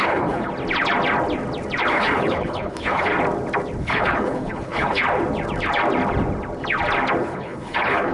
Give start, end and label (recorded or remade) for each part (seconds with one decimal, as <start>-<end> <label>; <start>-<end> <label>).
0.0-0.5 remade; 0.5-1.9 recorded; 1.9-3.1 remade; 3.1-3.8 recorded; 3.8-5.0 remade; 5.0-7.2 recorded; 7.2-8.1 remade